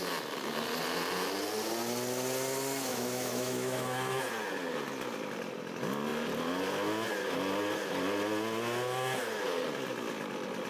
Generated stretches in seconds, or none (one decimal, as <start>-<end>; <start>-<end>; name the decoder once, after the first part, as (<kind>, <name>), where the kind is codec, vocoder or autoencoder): 2.9-4.2 (autoencoder, DAC-VAE)